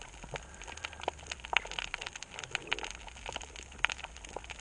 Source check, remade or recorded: recorded